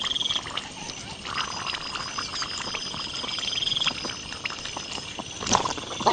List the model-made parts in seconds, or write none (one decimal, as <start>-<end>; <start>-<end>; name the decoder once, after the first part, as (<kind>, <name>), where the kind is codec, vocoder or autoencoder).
none